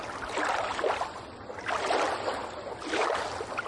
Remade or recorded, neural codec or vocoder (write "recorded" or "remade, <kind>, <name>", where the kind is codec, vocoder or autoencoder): recorded